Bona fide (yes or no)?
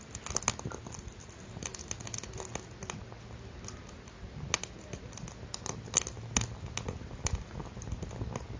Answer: yes